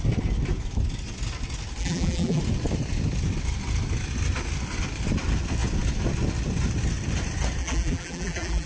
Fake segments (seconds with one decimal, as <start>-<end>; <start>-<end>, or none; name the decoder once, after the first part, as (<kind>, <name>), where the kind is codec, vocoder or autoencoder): 1.8-2.4 (vocoder, BigVGAN v2); 7.6-8.7